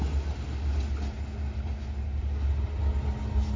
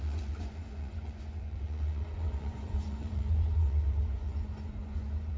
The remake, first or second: second